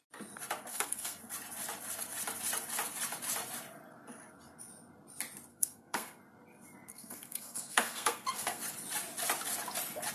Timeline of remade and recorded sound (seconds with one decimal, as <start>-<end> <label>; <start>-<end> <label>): 0.0-0.7 recorded; 0.7-1.2 remade; 1.2-5.5 recorded; 5.5-6.2 remade; 6.2-6.9 recorded; 6.9-8.6 remade; 8.6-10.1 recorded